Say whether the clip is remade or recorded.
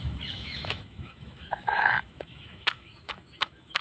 remade